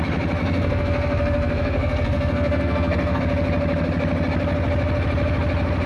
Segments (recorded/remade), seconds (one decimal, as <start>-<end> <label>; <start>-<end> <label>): 0.0-0.4 recorded; 0.4-3.2 remade; 3.2-5.9 recorded